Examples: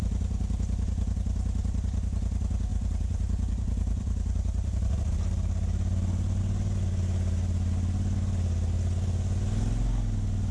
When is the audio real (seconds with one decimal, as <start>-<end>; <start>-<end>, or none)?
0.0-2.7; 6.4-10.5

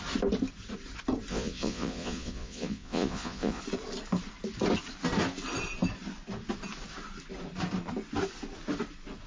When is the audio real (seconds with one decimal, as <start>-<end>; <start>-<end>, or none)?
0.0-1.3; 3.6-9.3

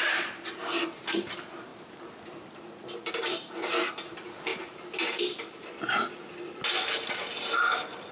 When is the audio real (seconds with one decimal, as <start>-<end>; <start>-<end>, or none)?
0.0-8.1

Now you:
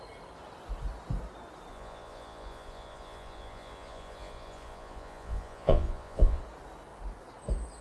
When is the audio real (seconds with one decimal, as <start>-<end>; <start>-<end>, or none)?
0.0-1.7; 6.4-7.8

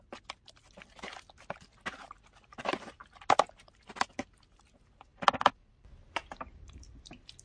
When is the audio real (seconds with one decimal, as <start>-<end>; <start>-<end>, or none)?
0.0-7.4

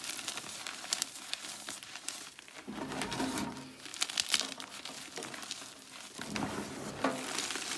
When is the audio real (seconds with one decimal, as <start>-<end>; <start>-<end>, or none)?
0.0-7.8

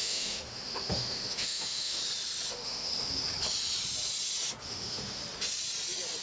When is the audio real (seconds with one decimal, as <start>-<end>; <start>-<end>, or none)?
2.0-2.5; 2.9-4.6; 5.2-6.2